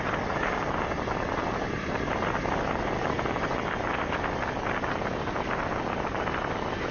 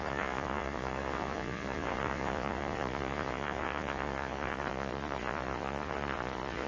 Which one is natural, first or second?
first